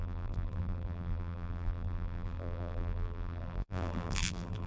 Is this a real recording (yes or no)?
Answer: no